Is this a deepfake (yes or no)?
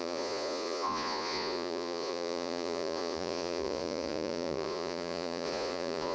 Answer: yes